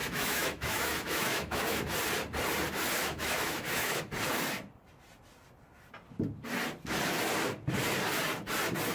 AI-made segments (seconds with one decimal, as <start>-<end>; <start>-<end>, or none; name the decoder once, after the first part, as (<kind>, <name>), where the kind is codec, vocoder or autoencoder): 0.0-1.8 (autoencoder, DAC-VAE); 3.0-4.0

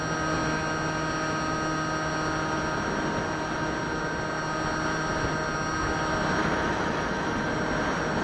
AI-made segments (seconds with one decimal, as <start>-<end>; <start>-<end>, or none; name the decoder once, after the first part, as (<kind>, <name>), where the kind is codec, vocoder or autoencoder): 6.4-7.5 (autoencoder, DAC-VAE)